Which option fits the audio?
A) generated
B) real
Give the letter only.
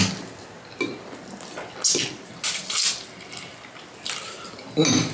B